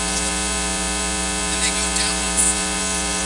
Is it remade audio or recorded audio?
remade